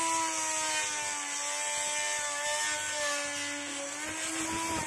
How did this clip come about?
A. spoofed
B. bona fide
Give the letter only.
B